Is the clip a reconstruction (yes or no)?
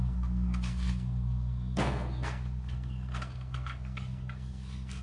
yes